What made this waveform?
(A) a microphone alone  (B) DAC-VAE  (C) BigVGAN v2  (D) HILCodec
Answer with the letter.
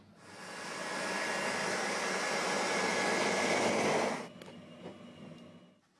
A